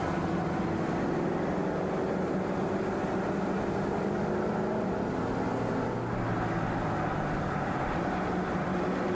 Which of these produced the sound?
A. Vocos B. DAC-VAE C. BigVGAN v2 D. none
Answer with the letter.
D